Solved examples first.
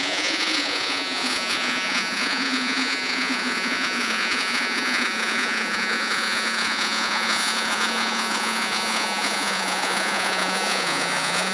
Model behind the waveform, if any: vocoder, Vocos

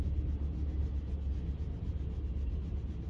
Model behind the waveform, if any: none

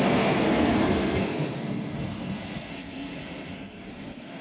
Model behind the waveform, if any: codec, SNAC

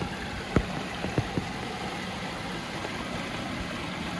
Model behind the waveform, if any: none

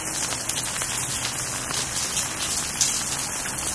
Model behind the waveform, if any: none